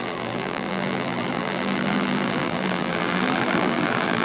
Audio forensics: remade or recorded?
remade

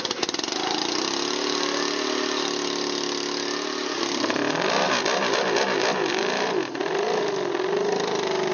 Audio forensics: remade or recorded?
recorded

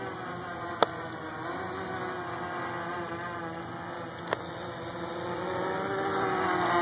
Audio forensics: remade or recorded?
recorded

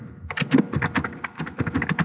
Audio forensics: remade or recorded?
recorded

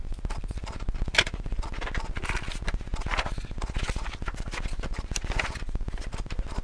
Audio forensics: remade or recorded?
recorded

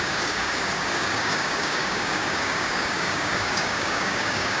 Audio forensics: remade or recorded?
remade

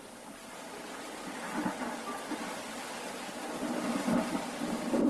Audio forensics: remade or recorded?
recorded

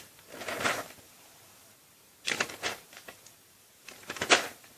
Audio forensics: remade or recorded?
remade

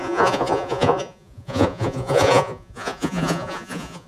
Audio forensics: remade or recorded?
remade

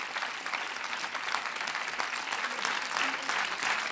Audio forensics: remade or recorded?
recorded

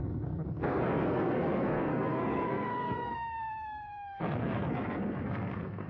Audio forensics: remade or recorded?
remade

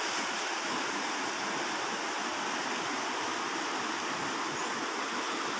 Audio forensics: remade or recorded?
recorded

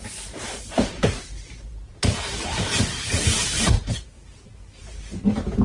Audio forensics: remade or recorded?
remade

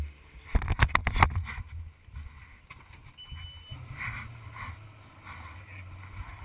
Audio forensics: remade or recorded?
recorded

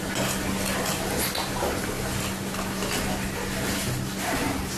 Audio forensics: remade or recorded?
recorded